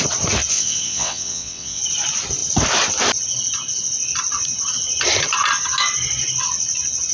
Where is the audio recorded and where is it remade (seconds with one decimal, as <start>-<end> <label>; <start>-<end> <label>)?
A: 0.0-0.5 recorded; 0.5-1.8 remade; 1.8-7.1 recorded